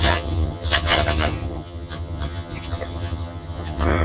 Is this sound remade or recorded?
remade